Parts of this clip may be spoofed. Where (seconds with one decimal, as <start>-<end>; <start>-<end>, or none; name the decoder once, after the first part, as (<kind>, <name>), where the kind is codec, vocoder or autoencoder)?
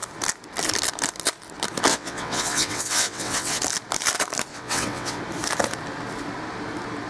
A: 1.9-3.6 (vocoder, WaveNeXt); 4.5-5.2